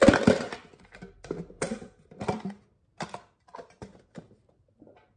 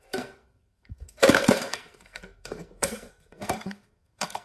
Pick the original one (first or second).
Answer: first